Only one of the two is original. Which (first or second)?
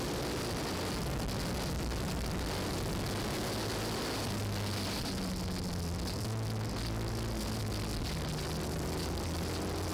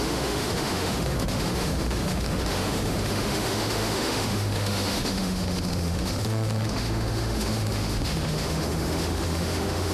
first